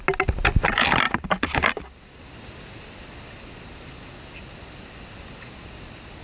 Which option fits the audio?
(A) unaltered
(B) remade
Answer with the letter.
A